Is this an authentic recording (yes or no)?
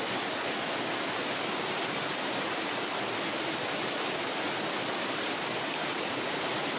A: yes